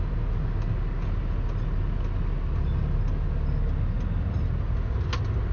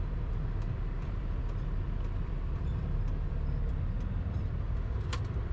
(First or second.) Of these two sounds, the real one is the first